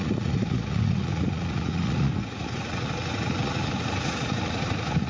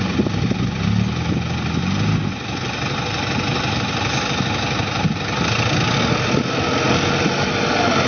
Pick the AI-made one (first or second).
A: first